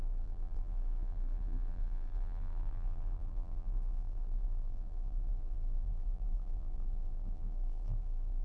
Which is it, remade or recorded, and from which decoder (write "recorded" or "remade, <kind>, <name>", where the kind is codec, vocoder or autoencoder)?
remade, vocoder, BigVGAN v2